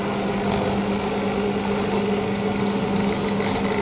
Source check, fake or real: real